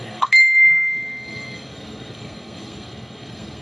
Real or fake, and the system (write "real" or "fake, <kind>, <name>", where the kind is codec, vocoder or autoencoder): fake, codec, SNAC